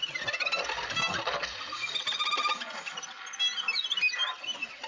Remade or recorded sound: recorded